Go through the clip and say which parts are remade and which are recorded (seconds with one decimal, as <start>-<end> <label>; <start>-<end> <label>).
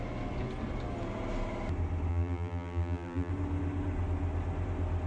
0.0-2.1 recorded; 2.1-3.3 remade; 3.3-5.1 recorded